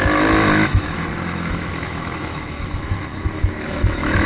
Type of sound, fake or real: fake